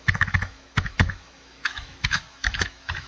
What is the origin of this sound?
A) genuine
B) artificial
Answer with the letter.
B